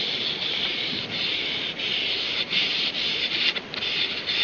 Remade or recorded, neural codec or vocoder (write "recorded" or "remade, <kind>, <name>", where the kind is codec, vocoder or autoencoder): recorded